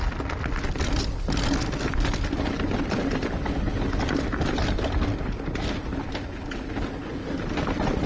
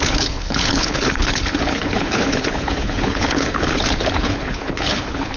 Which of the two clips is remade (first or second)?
second